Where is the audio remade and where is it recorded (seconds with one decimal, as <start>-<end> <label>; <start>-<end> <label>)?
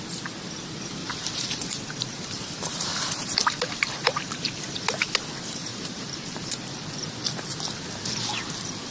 0.0-1.0 recorded; 1.0-4.8 remade; 4.8-5.7 recorded; 5.7-6.8 remade; 6.8-8.9 recorded